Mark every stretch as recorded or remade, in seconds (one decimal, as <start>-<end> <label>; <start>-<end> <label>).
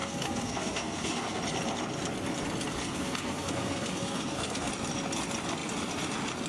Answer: 0.0-1.4 remade; 1.4-2.8 recorded; 2.8-4.7 remade; 4.7-6.5 recorded